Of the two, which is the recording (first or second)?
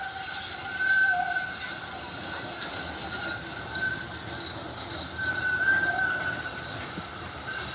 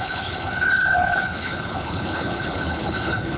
first